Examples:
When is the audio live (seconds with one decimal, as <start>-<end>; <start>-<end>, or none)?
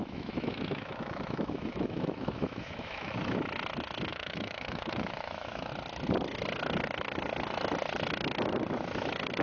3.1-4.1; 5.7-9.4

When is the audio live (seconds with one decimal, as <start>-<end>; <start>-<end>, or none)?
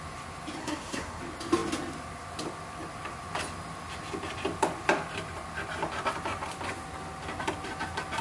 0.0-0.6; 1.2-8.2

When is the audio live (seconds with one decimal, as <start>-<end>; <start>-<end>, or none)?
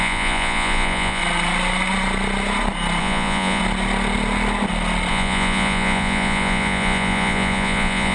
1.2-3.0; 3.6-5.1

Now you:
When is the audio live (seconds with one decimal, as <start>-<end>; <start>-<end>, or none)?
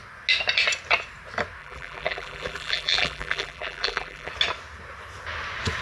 0.0-1.6; 4.3-5.8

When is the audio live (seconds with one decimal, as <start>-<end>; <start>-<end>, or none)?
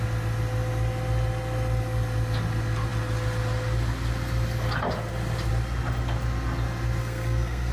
0.0-7.0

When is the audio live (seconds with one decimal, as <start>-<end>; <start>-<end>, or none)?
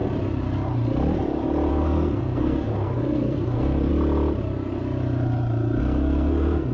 0.0-1.7; 3.9-5.8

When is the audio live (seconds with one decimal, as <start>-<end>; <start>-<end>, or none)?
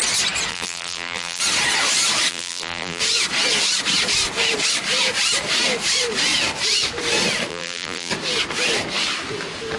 0.0-0.5; 1.4-2.3; 3.0-7.5; 8.1-9.8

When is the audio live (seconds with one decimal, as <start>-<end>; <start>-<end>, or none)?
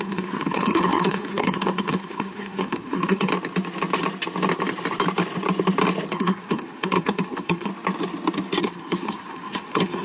3.3-6.1; 7.7-8.6